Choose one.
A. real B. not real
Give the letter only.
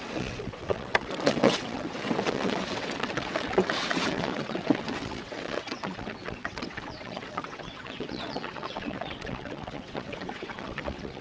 B